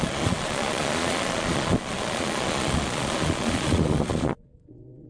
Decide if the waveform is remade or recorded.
remade